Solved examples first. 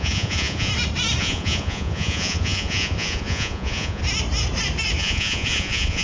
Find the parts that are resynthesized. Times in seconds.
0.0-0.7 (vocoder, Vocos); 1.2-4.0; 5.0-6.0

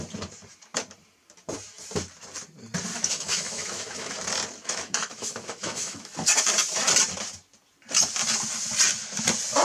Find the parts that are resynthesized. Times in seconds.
2.9-4.1 (autoencoder, DAC-VAE); 4.6-6.3

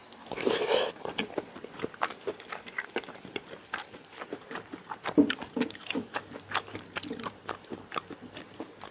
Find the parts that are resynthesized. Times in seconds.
1.7-8.9 (vocoder, BigVGAN v2)

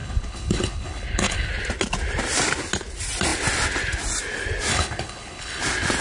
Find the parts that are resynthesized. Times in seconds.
0.0-1.5 (codec, HILCodec); 4.7-5.6

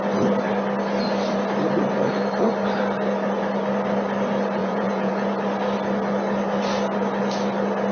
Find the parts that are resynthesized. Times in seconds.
4.6-5.1 (vocoder, Vocos)

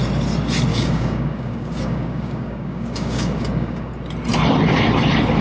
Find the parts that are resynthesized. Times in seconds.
0.7-3.9 (codec, DAC)

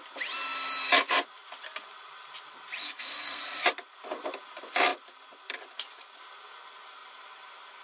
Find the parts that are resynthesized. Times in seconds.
2.8-3.4 (codec, SNAC)

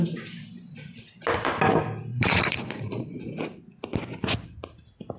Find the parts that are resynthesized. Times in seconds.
2.1-3.2 (vocoder, Vocos)